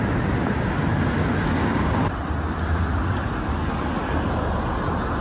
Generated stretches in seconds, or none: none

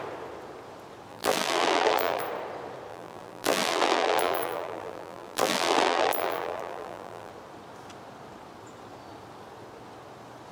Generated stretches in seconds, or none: 1.1-2.2 (vocoder, BigVGAN v2); 2.9-7.3

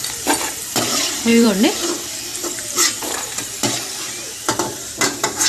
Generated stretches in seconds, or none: 0.0-5.5 (vocoder, BigVGAN v2)